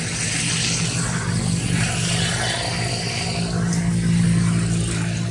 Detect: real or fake real